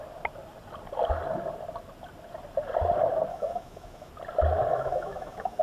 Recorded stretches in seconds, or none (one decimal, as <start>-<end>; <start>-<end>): 0.0-3.3; 4.1-4.7